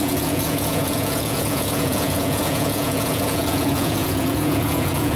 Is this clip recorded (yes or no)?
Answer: no